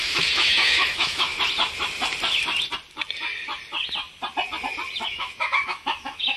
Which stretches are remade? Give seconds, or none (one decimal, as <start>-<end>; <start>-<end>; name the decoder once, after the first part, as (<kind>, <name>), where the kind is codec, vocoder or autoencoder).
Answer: 0.0-1.3 (autoencoder, DAC-VAE); 5.1-6.4

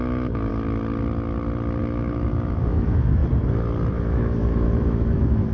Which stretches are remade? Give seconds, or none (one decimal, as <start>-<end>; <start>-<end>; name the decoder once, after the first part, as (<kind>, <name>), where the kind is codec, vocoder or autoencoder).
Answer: 0.0-0.5 (autoencoder, DAC-VAE); 1.8-3.2; 3.9-5.5

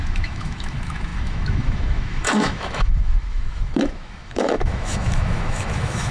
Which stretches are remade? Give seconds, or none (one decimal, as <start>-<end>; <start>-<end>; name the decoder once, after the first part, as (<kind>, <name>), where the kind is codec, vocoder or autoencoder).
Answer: 0.0-6.1 (autoencoder, DAC-VAE)

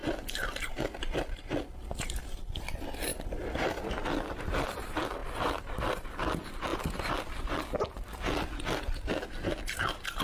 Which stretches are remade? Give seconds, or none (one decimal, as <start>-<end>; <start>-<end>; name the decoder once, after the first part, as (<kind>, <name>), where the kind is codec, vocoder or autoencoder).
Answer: none

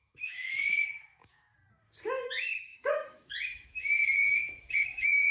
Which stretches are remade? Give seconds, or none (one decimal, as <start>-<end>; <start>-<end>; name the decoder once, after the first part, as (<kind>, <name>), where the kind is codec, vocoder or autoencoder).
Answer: 0.0-1.5 (autoencoder, DAC-VAE); 2.1-5.3

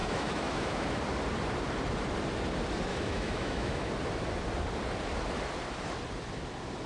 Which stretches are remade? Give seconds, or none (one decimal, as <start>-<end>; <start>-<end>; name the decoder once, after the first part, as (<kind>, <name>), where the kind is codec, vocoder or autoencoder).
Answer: 0.0-1.0 (autoencoder, DAC-VAE); 2.9-3.9

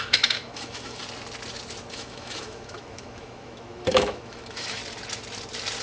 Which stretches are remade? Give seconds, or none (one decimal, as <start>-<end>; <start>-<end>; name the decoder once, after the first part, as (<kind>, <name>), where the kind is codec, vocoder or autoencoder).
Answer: 0.0-1.0 (autoencoder, DAC-VAE); 1.9-4.8

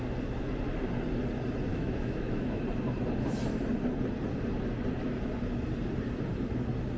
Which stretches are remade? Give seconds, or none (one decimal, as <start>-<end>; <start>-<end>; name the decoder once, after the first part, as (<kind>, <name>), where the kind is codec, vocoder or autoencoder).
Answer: 1.7-2.6 (autoencoder, DAC-VAE)